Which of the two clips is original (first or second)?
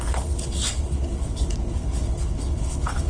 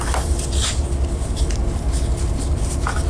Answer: second